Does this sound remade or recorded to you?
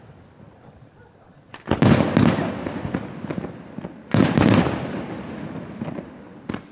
remade